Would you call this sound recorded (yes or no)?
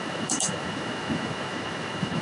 no